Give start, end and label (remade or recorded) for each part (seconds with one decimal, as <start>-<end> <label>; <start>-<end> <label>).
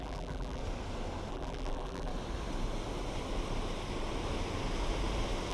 0.0-0.6 remade; 0.6-1.3 recorded; 1.3-2.1 remade; 2.1-5.5 recorded